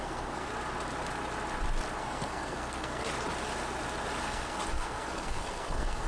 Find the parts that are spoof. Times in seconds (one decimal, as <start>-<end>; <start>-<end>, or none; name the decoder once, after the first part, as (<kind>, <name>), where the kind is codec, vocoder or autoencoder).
0.0-0.5 (codec, SNAC); 2.0-3.0; 4.2-6.1